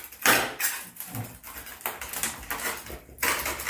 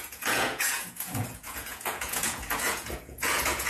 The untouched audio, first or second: first